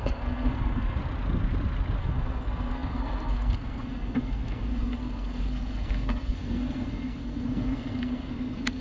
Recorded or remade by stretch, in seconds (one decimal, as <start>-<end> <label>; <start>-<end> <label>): 0.0-1.0 remade; 1.0-2.0 recorded; 2.0-8.8 remade